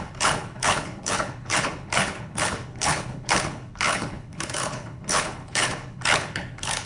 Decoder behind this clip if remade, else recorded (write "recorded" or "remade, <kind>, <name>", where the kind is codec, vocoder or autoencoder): remade, codec, HILCodec